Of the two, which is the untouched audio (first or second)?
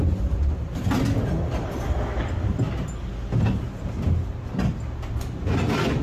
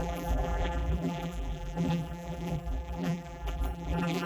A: first